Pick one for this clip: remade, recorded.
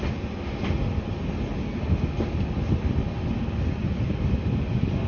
recorded